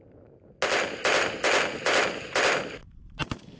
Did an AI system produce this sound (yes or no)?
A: no